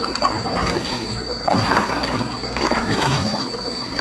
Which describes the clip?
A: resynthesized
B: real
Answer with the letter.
A